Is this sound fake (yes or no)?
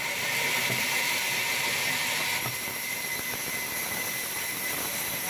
no